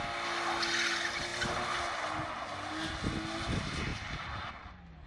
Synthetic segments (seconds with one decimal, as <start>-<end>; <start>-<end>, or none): none